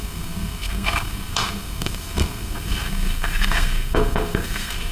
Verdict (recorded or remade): remade